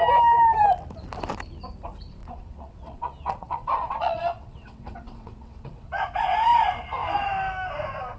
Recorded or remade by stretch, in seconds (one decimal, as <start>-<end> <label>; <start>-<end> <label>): 0.0-2.2 recorded; 2.2-6.0 remade; 6.0-8.2 recorded